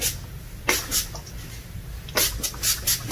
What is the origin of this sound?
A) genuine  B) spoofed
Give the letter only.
A